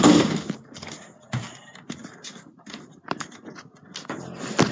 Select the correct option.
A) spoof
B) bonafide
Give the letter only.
B